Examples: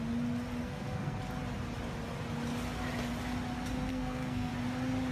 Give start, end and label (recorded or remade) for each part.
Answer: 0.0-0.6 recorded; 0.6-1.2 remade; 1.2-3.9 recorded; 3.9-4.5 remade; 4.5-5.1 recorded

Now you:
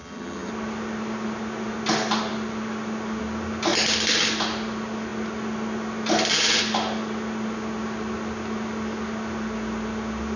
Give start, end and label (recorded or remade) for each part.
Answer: 0.0-0.5 remade; 0.5-10.4 recorded

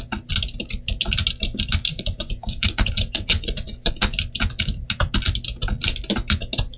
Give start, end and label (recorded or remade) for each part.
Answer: 0.0-1.9 recorded; 1.9-3.9 remade; 3.9-6.8 recorded